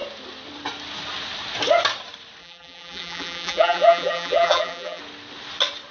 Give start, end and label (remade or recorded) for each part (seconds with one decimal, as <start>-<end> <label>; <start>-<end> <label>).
0.0-2.4 recorded; 2.4-5.0 remade; 5.0-5.9 recorded